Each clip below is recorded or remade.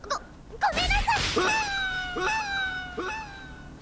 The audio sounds recorded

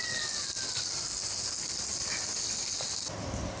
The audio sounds recorded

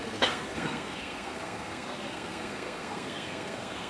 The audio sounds remade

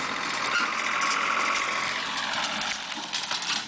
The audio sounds recorded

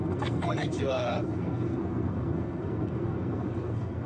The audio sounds remade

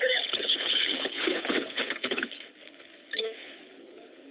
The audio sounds remade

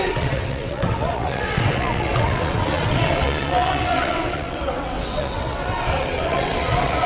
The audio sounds remade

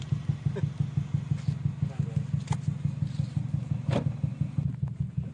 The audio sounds recorded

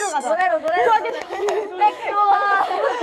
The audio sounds remade